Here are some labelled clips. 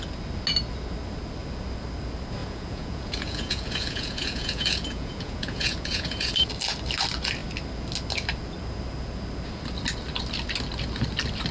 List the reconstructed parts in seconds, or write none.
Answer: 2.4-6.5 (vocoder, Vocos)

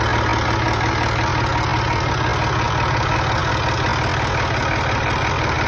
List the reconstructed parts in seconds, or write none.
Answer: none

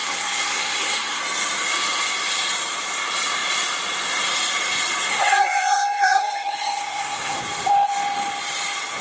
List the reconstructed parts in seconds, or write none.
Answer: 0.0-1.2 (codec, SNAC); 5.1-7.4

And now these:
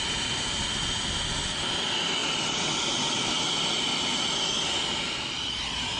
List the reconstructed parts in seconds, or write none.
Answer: none